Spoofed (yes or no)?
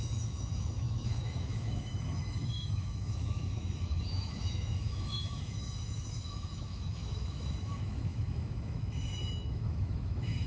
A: yes